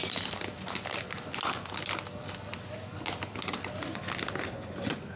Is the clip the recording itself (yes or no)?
yes